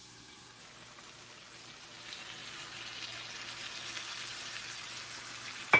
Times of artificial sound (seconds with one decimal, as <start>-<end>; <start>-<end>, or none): 0.0-0.6